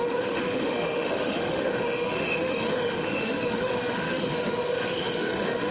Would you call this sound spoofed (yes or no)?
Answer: yes